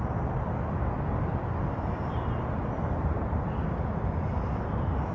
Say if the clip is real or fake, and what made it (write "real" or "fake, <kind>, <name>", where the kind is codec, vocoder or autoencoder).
real